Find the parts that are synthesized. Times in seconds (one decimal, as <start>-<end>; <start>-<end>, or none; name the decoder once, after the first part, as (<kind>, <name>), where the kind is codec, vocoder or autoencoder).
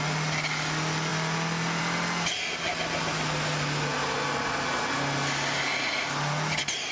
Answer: none